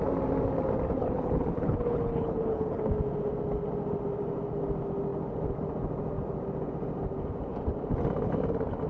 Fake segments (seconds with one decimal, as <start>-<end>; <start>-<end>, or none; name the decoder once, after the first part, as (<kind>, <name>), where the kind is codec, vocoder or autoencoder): 1.0-2.9 (codec, HILCodec)